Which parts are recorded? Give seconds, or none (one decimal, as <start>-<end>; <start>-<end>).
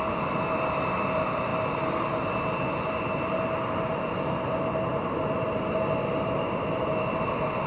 0.0-7.7